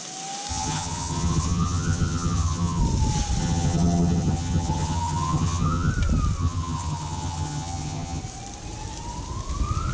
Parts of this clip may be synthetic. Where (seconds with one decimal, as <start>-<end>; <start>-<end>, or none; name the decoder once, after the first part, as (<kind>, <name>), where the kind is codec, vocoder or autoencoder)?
0.5-2.8 (vocoder, HiFi-GAN); 3.4-5.9; 6.4-8.2